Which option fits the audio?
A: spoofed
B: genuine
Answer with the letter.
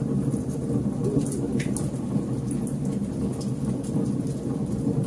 B